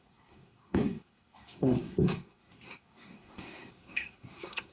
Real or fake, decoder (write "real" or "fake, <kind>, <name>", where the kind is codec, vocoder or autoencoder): fake, codec, SNAC